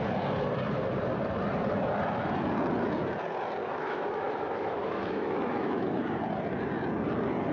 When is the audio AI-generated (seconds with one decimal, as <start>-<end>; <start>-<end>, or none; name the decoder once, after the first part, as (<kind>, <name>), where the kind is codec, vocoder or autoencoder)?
3.6-6.2 (autoencoder, DAC-VAE)